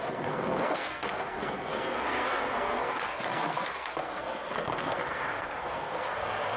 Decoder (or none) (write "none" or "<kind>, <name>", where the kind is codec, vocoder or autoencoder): codec, SNAC